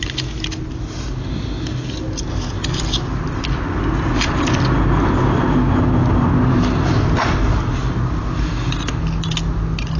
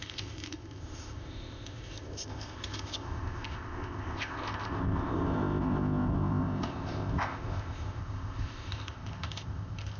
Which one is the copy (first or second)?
second